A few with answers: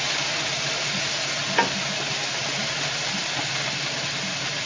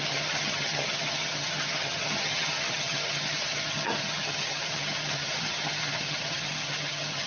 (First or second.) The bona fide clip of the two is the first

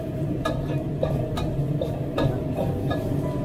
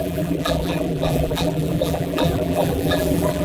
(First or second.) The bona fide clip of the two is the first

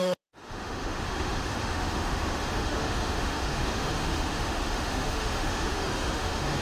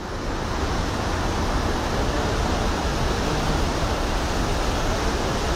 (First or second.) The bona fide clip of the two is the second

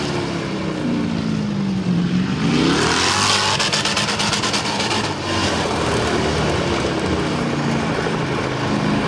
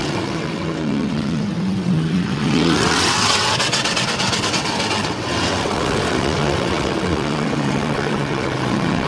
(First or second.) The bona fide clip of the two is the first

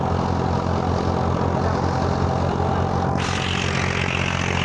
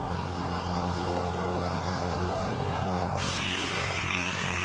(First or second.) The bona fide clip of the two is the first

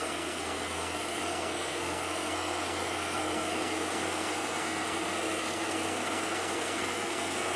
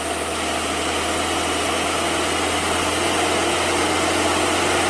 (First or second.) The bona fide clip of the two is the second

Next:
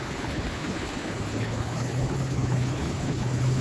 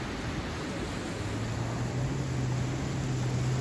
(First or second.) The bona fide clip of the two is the second